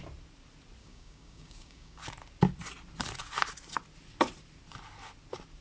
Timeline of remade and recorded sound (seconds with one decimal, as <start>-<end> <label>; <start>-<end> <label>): 0.0-0.8 recorded; 0.8-2.0 remade; 2.0-5.6 recorded